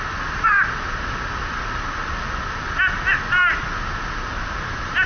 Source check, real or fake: real